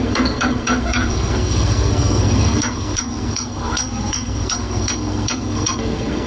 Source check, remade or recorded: remade